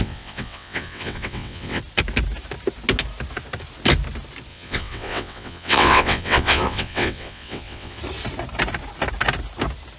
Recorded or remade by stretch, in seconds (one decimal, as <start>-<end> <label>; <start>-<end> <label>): 0.0-1.8 remade; 1.8-4.5 recorded; 4.5-8.0 remade; 8.0-10.0 recorded